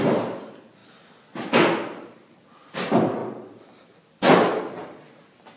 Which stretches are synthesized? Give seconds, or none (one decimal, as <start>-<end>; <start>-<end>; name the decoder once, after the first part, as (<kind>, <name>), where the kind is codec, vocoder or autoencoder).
none